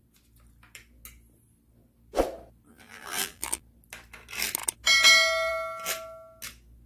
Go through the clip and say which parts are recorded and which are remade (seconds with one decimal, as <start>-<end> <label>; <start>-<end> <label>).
0.0-2.7 recorded; 2.7-3.6 remade; 3.6-6.9 recorded